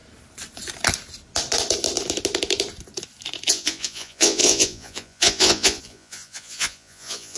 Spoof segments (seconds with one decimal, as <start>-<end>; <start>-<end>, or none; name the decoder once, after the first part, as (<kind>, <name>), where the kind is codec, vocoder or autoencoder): 3.5-7.4 (vocoder, Vocos)